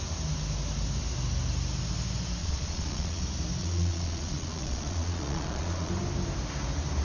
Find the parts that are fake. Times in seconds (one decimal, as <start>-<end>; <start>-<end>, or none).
2.4-3.2; 3.6-5.9